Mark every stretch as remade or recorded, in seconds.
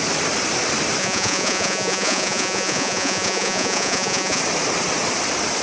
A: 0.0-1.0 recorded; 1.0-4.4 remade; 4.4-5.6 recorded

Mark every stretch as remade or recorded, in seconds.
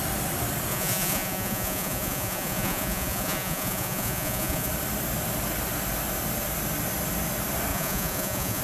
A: 0.0-0.7 recorded; 0.7-4.7 remade; 4.7-7.7 recorded; 7.7-8.6 remade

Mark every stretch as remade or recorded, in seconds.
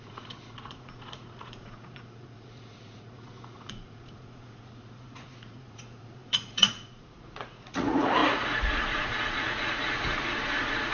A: 0.0-10.9 remade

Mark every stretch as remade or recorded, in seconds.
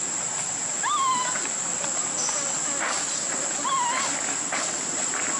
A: 0.0-5.4 recorded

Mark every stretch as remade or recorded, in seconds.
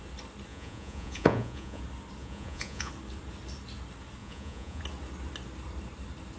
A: 0.0-0.5 recorded; 0.5-1.8 remade; 1.8-2.2 recorded; 2.2-2.9 remade; 2.9-4.2 recorded; 4.2-4.8 remade; 4.8-6.4 recorded